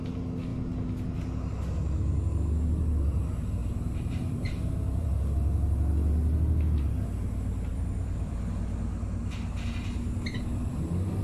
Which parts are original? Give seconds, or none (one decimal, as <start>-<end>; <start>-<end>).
0.0-3.6; 5.3-7.7; 8.6-11.2